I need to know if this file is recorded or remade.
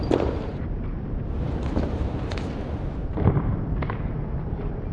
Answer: remade